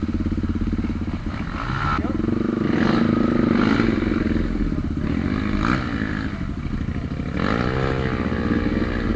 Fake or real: real